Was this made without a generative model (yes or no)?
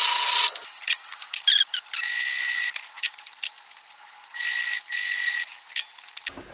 yes